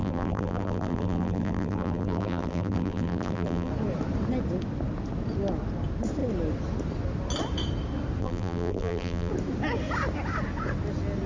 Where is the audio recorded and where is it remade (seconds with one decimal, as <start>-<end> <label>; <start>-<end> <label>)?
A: 0.0-3.7 remade; 3.7-8.2 recorded; 8.2-9.3 remade; 9.3-11.3 recorded